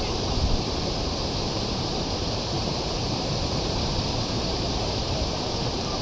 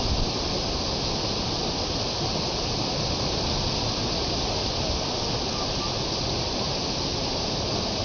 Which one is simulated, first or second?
first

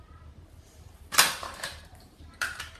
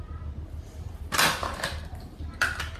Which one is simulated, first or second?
first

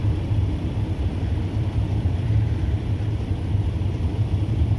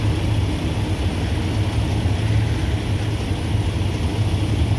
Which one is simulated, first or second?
first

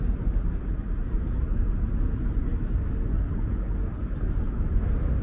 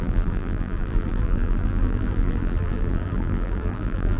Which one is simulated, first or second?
second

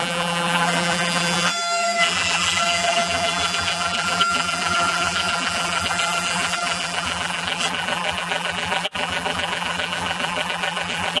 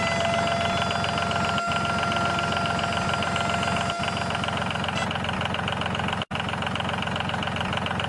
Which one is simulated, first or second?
first